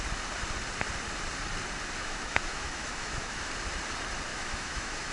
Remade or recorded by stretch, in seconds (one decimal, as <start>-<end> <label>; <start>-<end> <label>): 0.0-2.0 recorded; 2.0-3.5 remade; 3.5-4.3 recorded; 4.3-5.1 remade